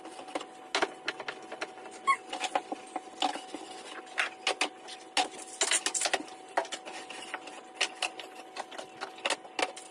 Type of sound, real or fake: real